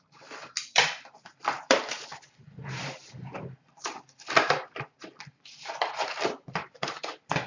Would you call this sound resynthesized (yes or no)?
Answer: yes